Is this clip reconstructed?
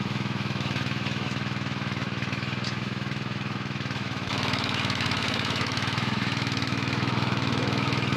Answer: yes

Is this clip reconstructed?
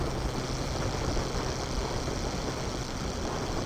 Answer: no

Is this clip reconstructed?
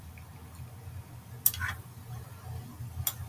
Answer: no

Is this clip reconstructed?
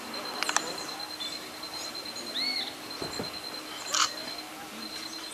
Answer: no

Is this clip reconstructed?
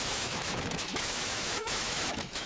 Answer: yes